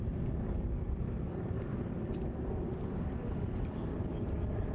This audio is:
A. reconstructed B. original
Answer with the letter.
B